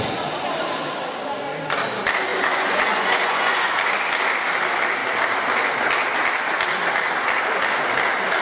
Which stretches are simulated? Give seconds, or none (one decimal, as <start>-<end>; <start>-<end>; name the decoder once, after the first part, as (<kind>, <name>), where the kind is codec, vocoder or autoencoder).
2.3-3.7 (vocoder, Vocos)